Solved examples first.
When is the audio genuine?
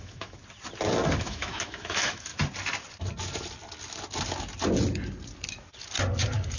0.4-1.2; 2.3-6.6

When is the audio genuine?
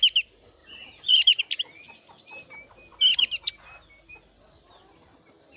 0.0-0.6; 1.4-5.6